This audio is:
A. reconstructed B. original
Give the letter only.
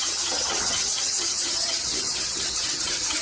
A